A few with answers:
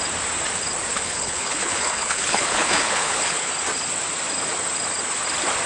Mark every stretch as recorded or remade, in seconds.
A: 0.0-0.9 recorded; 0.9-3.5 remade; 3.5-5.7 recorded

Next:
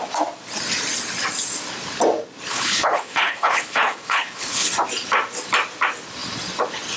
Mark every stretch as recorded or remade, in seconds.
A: 0.0-2.5 recorded; 2.5-4.7 remade; 4.7-7.0 recorded